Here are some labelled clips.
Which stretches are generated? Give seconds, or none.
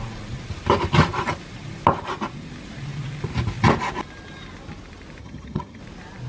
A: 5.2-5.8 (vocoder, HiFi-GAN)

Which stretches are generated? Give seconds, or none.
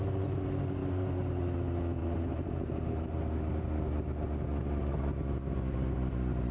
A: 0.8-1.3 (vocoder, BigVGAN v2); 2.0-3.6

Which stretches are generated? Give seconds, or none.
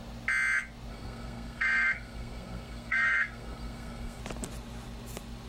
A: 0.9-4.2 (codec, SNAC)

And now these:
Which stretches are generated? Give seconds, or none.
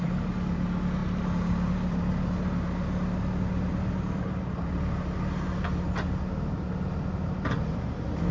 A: none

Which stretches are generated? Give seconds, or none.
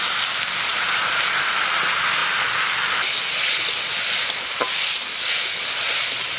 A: 0.7-1.8 (vocoder, BigVGAN v2)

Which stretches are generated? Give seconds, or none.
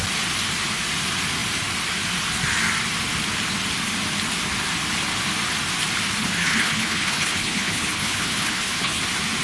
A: 6.2-9.0 (codec, HILCodec)